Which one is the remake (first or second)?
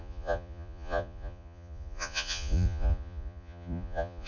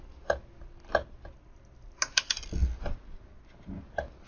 first